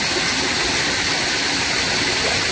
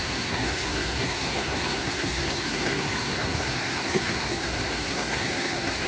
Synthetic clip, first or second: second